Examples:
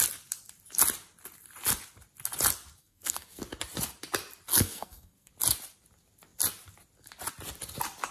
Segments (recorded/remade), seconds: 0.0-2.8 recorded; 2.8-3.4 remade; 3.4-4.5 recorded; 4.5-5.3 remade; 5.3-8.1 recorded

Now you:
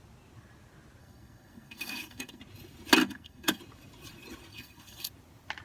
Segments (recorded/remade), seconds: 0.0-1.0 recorded; 1.0-2.4 remade; 2.4-3.0 recorded; 3.0-3.6 remade; 3.6-4.5 recorded; 4.5-5.1 remade; 5.1-5.6 recorded

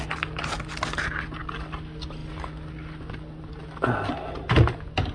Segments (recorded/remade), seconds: 0.0-5.1 recorded

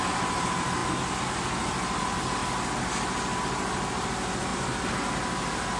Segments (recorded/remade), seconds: 0.0-5.8 recorded